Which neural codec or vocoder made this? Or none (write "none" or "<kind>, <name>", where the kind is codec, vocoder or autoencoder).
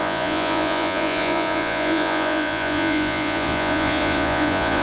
vocoder, Vocos